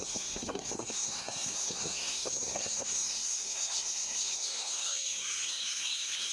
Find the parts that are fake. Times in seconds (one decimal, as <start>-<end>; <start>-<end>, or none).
0.0-6.3